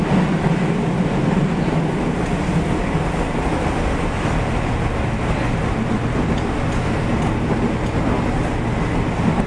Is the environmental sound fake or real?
real